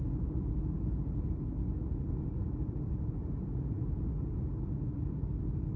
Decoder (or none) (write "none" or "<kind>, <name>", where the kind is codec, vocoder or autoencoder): none